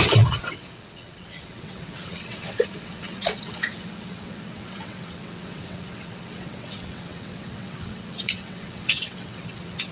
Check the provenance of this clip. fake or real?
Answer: fake